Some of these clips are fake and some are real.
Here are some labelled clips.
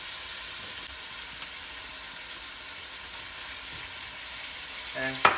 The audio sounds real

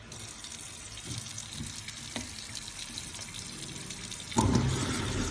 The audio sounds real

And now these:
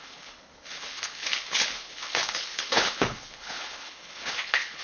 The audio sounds fake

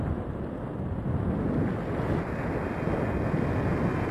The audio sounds real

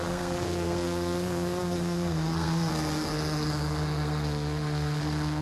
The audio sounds fake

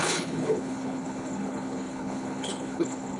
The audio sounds fake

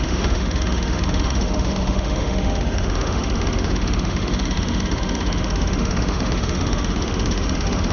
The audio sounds fake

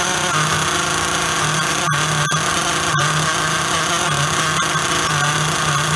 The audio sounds real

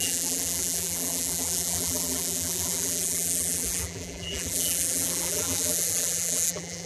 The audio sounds fake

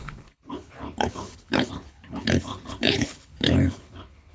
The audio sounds fake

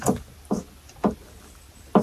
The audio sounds real